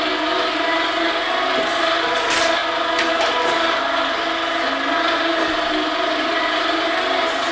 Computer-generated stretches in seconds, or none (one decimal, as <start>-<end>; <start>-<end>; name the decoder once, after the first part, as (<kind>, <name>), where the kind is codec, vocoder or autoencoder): none